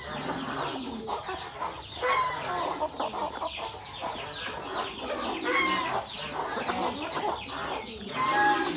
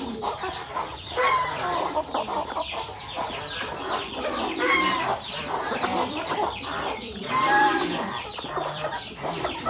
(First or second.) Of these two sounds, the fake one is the second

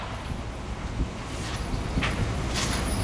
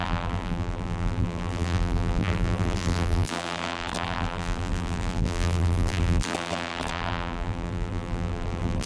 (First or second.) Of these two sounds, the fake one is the second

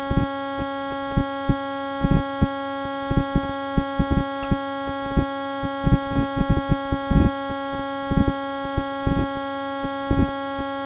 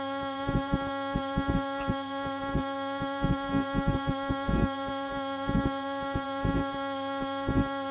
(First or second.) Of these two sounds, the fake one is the second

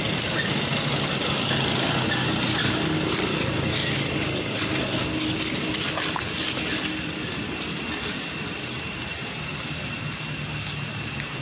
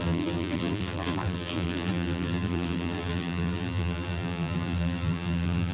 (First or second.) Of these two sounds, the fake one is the second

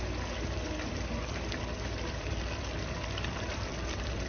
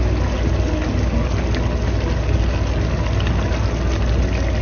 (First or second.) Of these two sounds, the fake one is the first